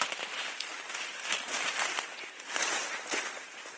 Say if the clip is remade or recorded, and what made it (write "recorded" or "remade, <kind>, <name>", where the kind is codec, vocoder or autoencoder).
recorded